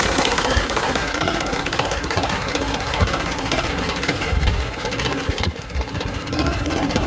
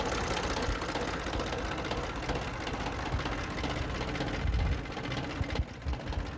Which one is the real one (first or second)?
second